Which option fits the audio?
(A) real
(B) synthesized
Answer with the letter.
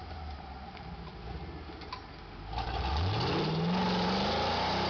A